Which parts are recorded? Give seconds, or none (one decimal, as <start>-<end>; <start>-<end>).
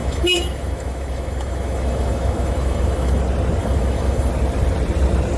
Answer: 3.2-3.6; 4.3-5.4